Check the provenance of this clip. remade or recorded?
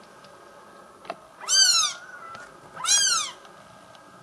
recorded